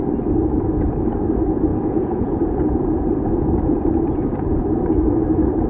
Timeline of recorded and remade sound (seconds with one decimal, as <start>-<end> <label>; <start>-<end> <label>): 0.0-1.7 recorded; 1.7-4.5 remade; 4.5-5.7 recorded